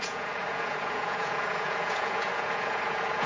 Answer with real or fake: fake